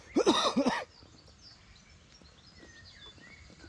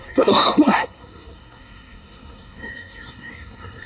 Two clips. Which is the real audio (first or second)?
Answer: first